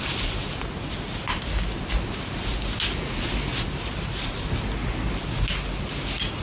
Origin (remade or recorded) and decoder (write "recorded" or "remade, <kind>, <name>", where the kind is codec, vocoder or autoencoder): recorded